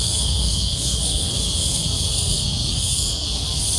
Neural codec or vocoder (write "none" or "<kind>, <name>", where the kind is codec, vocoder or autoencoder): codec, SNAC